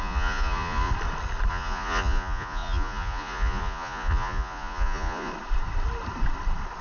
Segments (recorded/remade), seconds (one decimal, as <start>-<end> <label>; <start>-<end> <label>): 0.0-0.9 remade; 0.9-1.5 recorded; 1.5-5.3 remade; 5.3-6.8 recorded

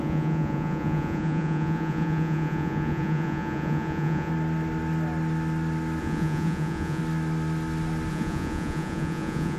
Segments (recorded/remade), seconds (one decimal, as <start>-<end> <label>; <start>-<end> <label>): 0.0-4.3 remade; 4.3-6.0 recorded; 6.0-7.0 remade; 7.0-8.1 recorded; 8.1-9.6 remade

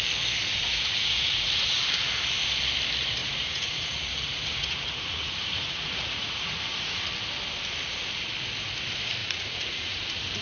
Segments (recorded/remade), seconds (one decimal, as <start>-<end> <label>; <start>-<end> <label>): 0.0-0.5 recorded; 0.5-1.8 remade; 1.8-3.2 recorded; 3.2-7.0 remade; 7.0-9.2 recorded; 9.2-10.0 remade; 10.0-10.4 recorded

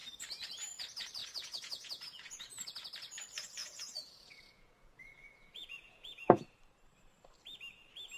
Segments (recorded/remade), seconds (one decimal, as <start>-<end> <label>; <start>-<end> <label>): 0.0-1.2 recorded; 1.2-2.6 remade; 2.6-3.6 recorded; 3.6-6.4 remade; 6.4-8.2 recorded

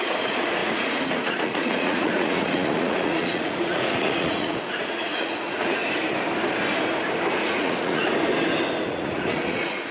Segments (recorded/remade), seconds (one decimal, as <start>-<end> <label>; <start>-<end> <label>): 0.0-5.8 remade; 5.8-7.3 recorded; 7.3-8.0 remade; 8.0-8.9 recorded; 8.9-9.9 remade